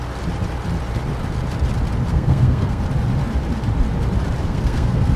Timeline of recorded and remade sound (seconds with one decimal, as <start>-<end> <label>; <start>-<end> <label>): 0.0-2.1 recorded; 2.1-2.8 remade; 2.8-4.4 recorded; 4.4-5.2 remade